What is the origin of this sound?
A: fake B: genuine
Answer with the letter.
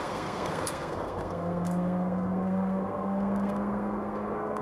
A